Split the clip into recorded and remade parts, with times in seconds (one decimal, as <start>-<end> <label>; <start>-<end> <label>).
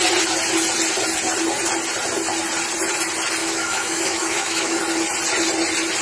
0.0-3.4 recorded; 3.4-4.8 remade; 4.8-6.0 recorded